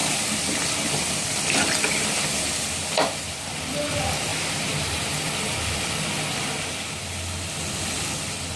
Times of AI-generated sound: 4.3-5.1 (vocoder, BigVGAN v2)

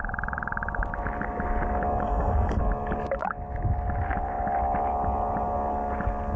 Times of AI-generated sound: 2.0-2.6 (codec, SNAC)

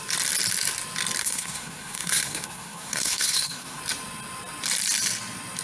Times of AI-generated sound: 1.2-3.8 (codec, SNAC)

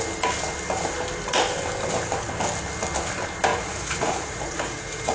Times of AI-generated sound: 3.5-5.1 (vocoder, Vocos)

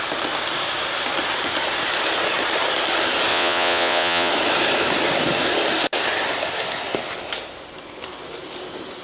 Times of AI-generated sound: 3.3-4.3 (vocoder, WaveNeXt)

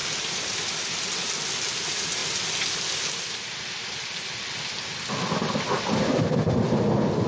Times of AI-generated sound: none

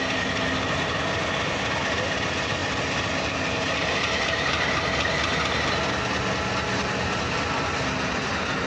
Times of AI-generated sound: none

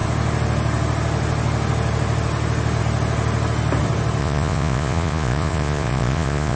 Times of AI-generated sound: 4.2-6.6 (vocoder, Vocos)